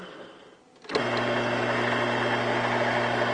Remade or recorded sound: recorded